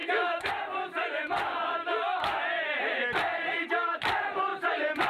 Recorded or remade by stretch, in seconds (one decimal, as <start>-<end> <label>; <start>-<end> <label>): 0.0-0.5 remade; 0.5-5.1 recorded